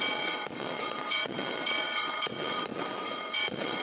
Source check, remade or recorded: remade